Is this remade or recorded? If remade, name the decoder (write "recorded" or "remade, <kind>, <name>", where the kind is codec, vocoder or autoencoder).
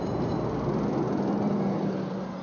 recorded